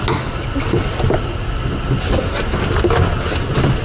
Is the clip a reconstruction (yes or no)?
no